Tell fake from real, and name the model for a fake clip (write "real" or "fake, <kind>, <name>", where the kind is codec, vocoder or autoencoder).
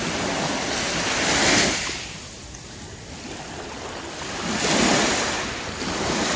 real